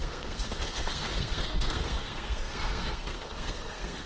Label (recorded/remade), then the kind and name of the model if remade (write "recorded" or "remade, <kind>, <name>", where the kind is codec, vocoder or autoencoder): remade, codec, SNAC